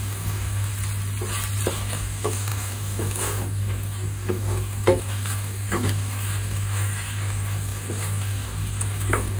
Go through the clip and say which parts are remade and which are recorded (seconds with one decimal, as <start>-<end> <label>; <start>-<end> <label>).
0.0-0.7 remade; 0.7-1.7 recorded; 1.7-9.4 remade